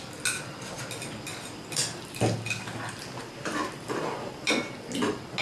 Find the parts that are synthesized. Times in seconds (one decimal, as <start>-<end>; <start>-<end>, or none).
1.3-4.5